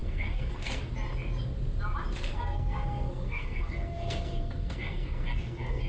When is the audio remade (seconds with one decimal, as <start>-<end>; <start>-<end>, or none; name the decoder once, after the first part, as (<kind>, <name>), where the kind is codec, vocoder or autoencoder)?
0.0-0.8 (codec, SNAC); 2.3-5.9